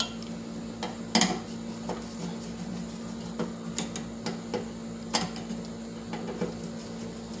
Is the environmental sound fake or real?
real